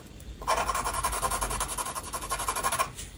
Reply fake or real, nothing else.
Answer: real